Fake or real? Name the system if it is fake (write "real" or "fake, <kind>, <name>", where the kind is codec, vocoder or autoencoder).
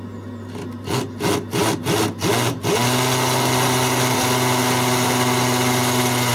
real